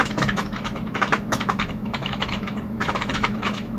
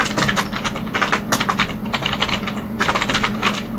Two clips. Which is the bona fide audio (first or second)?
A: second